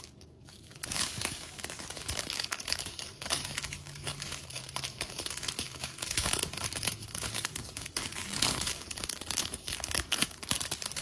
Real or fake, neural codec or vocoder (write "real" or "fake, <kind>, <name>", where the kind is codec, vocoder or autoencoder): fake, codec, DAC